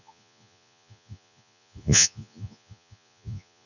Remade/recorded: remade